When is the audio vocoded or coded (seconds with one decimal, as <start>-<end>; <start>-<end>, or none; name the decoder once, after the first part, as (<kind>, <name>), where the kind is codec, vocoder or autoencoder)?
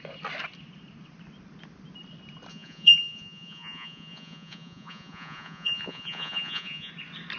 2.5-6.9 (vocoder, Vocos)